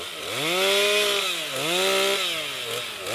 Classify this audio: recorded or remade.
recorded